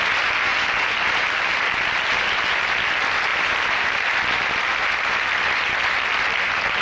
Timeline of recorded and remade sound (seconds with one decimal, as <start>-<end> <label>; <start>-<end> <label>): 0.0-6.8 recorded

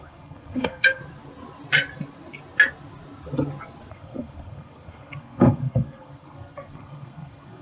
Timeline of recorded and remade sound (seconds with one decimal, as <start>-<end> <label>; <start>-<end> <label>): 0.0-1.0 remade; 1.0-3.9 recorded; 3.9-7.6 remade